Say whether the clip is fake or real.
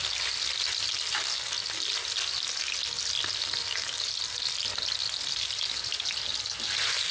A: real